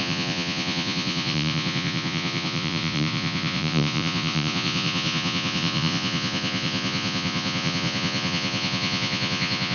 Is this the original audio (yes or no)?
no